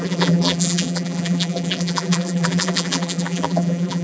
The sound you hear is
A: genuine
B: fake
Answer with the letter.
B